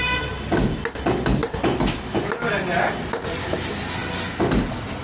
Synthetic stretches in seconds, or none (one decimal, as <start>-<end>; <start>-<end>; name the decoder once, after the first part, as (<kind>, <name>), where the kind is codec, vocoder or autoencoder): none